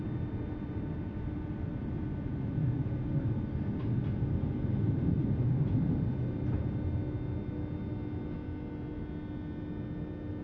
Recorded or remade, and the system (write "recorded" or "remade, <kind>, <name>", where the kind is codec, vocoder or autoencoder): recorded